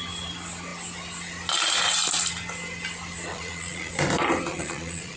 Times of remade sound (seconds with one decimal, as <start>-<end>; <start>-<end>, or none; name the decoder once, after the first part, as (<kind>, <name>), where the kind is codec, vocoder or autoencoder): 3.3-3.9 (vocoder, Vocos); 4.5-5.2